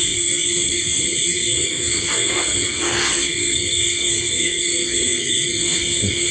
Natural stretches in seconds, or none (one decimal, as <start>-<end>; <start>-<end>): none